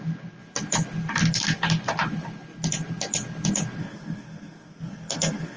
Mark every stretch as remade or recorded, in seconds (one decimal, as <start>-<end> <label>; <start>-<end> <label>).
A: 0.0-3.8 recorded; 3.8-5.6 remade